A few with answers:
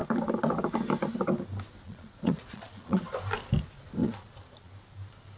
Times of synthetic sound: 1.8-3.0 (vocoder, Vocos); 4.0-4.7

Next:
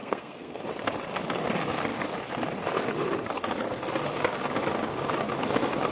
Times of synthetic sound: 0.0-0.6 (codec, SNAC)

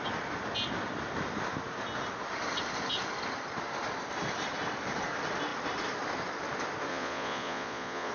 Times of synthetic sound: 6.9-8.1 (vocoder, Vocos)